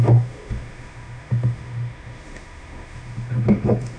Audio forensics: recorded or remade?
remade